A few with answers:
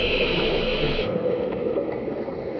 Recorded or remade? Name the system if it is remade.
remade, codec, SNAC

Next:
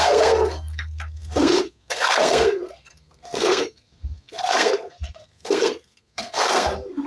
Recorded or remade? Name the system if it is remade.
remade, codec, SNAC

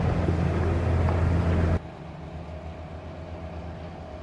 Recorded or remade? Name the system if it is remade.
recorded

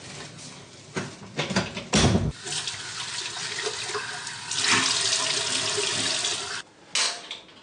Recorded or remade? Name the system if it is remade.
recorded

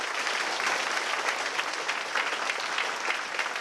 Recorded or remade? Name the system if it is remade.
recorded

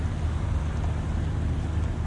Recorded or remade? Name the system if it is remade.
recorded